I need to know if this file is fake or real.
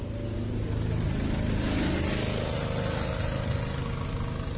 real